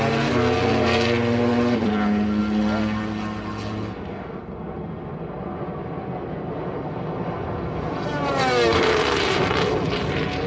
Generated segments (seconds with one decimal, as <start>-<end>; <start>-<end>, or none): none